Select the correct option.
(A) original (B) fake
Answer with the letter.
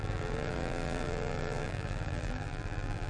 B